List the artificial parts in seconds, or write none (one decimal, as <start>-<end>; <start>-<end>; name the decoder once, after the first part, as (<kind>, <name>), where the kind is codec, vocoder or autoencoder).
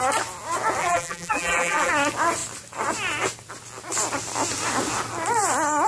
0.8-1.9 (vocoder, BigVGAN v2)